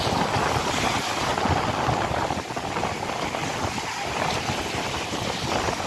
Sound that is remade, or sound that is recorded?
recorded